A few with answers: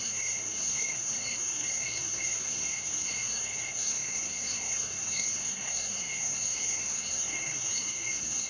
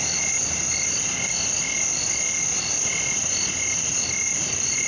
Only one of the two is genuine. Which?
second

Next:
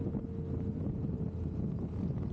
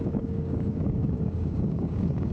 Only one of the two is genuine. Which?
first